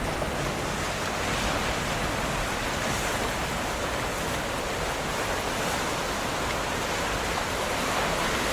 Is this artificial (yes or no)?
no